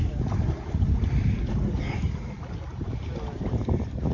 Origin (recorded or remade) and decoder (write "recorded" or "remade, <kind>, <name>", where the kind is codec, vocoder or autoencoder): recorded